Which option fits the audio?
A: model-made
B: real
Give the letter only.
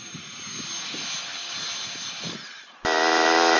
B